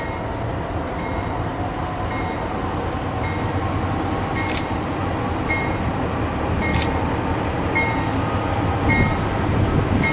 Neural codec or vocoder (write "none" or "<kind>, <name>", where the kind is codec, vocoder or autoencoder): none